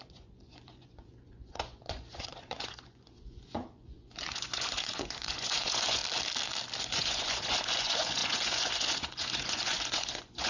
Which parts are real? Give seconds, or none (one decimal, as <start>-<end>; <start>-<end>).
6.0-6.8

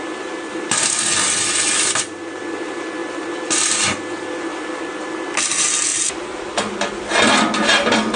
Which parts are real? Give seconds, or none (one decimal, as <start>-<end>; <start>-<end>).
0.0-8.2

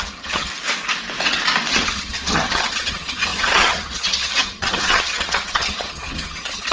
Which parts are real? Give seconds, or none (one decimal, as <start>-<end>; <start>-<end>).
0.5-1.7

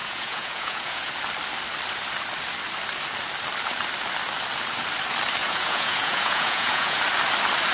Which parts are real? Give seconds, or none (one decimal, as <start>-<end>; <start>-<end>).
1.1-5.4; 7.0-7.7

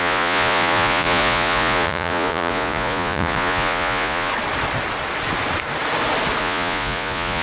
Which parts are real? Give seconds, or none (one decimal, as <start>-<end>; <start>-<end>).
4.3-6.4

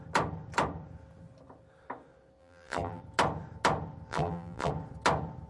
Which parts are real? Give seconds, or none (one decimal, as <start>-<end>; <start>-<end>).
0.0-2.4; 3.0-4.1; 4.7-5.5

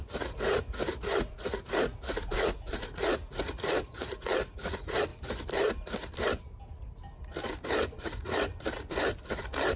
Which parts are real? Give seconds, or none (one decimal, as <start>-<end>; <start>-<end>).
5.1-8.1; 8.5-9.8